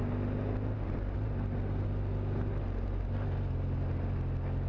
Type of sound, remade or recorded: recorded